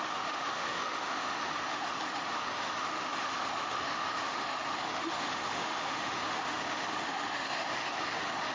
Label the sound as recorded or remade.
remade